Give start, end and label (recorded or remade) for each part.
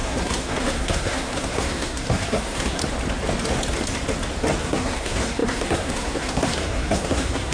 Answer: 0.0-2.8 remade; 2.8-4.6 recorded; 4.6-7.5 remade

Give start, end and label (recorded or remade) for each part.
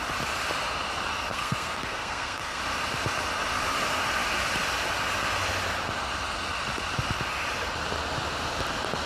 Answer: 0.0-1.3 recorded; 1.3-2.6 remade; 2.6-9.1 recorded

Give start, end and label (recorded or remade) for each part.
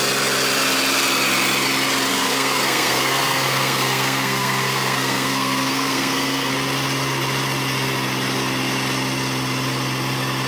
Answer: 0.0-2.1 recorded; 2.1-6.5 remade; 6.5-10.5 recorded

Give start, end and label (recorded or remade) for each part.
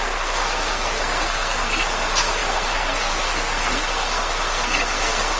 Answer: 0.0-5.4 remade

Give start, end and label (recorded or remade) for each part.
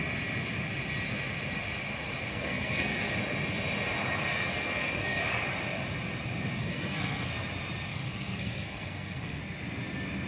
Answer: 0.0-2.3 recorded; 2.3-3.1 remade; 3.1-4.3 recorded; 4.3-5.4 remade; 5.4-6.6 recorded; 6.6-7.3 remade; 7.3-7.9 recorded; 7.9-9.4 remade; 9.4-10.3 recorded